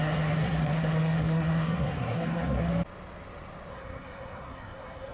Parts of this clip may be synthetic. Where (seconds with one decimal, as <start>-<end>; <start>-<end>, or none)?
0.0-2.7; 3.7-5.1